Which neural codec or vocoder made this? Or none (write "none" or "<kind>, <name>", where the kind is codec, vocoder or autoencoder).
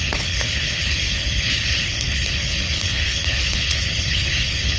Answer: codec, HILCodec